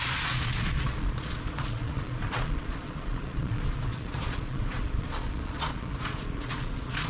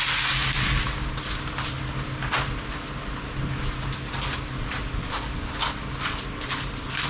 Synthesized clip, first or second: first